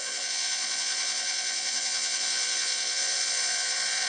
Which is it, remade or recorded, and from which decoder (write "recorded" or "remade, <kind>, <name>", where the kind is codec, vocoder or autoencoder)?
remade, vocoder, Vocos